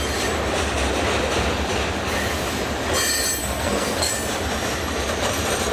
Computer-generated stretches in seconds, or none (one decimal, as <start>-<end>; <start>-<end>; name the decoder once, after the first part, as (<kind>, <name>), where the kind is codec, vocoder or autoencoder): 3.4-4.1 (codec, SNAC)